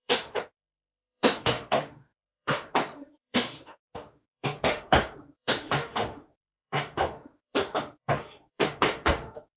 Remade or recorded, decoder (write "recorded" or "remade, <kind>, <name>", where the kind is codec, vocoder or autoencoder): remade, autoencoder, DAC-VAE